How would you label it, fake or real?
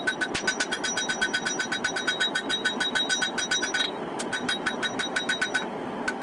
real